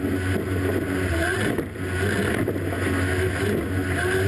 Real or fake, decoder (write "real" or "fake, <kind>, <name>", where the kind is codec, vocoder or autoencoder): real